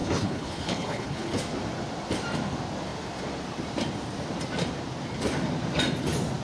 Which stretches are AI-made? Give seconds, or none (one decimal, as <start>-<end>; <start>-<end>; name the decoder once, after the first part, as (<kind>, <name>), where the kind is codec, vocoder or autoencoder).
0.0-1.4 (codec, HILCodec)